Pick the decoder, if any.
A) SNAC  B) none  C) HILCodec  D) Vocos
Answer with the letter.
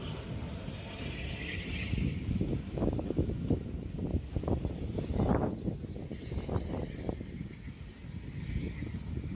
B